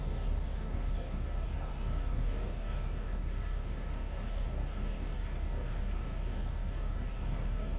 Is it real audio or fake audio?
fake